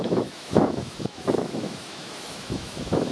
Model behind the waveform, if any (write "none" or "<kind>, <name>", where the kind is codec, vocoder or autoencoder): autoencoder, DAC-VAE